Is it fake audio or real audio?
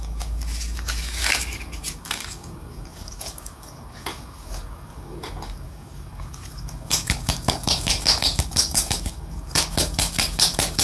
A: fake